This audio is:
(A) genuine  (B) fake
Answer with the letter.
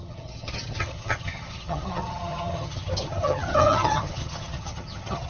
B